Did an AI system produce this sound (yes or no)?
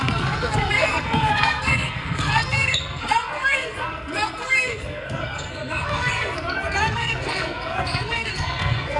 yes